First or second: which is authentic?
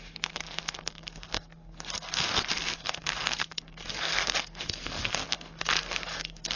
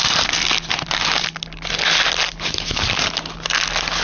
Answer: second